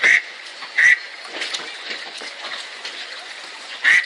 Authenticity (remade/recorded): remade